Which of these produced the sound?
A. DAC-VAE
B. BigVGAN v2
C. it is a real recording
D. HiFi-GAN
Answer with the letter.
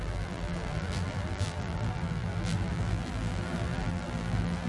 B